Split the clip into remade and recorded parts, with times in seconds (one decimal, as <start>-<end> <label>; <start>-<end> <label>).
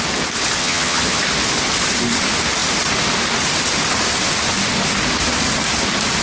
0.0-0.6 recorded; 0.6-1.2 remade; 1.2-6.2 recorded